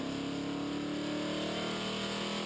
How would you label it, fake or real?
real